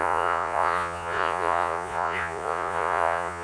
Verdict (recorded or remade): remade